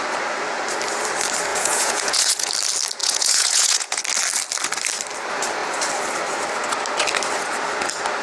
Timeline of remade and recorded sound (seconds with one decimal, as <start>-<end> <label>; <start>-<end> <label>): 0.0-1.5 recorded; 1.5-2.5 remade; 2.5-3.0 recorded; 3.0-4.0 remade; 4.0-8.2 recorded